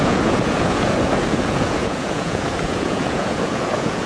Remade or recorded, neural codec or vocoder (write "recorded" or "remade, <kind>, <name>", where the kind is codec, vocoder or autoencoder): remade, vocoder, Vocos